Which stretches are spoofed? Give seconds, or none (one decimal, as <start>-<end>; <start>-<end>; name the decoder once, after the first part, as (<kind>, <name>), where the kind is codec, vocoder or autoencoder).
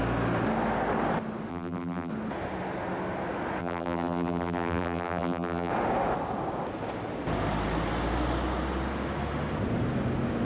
1.5-2.1 (vocoder, BigVGAN v2); 3.6-5.7